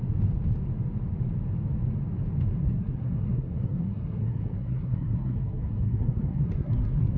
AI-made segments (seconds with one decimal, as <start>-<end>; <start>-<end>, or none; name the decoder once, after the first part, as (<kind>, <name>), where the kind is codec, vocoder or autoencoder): 2.6-7.2 (codec, SNAC)